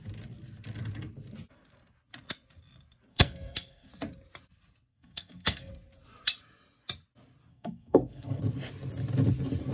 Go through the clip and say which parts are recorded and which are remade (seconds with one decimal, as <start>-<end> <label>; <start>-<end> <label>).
0.0-3.1 recorded; 3.1-3.9 remade; 3.9-4.9 recorded; 4.9-5.7 remade; 5.7-7.5 recorded; 7.5-8.4 remade; 8.4-9.7 recorded